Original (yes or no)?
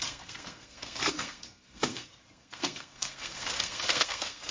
no